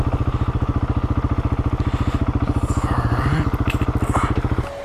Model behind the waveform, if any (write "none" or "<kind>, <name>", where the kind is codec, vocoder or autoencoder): none